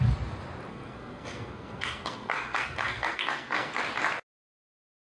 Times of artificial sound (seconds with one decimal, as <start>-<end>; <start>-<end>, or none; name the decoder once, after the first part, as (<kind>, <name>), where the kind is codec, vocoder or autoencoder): 0.7-3.8 (codec, SNAC)